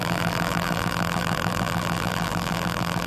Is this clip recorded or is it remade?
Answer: remade